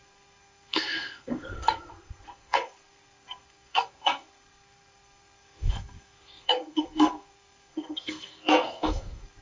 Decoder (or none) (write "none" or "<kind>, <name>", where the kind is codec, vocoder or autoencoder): codec, SNAC